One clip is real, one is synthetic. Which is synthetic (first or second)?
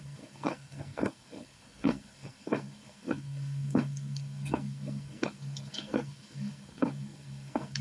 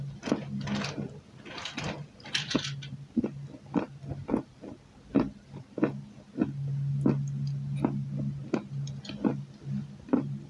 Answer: first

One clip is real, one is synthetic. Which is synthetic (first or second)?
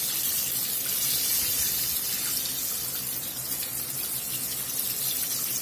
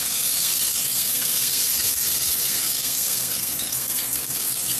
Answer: second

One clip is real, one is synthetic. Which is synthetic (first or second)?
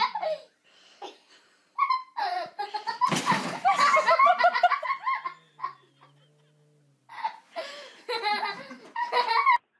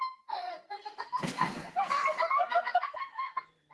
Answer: second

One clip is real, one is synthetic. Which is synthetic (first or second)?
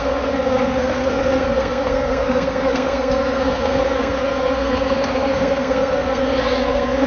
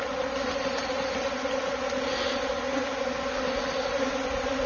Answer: first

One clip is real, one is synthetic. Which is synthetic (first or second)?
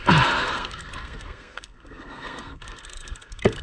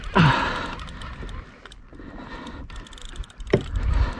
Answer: first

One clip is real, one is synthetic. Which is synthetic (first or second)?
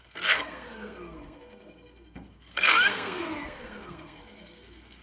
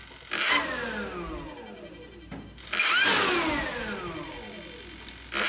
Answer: first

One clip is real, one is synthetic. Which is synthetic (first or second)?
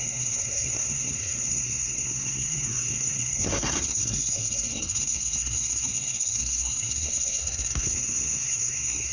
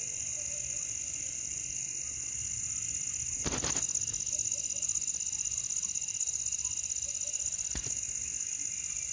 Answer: first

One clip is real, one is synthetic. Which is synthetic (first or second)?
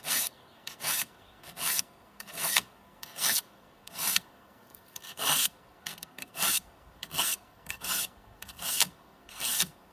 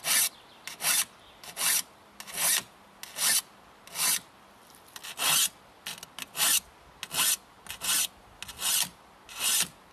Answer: first